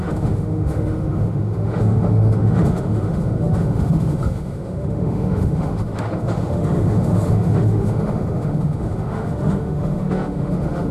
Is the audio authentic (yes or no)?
no